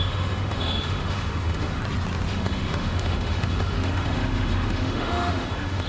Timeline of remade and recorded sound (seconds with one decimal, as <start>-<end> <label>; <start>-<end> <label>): 0.0-1.8 remade; 1.8-2.3 recorded; 2.3-5.9 remade